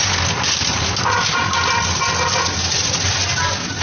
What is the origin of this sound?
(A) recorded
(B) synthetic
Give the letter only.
A